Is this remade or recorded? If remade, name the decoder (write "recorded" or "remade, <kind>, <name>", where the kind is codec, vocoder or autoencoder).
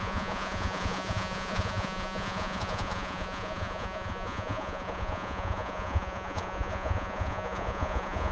remade, vocoder, Vocos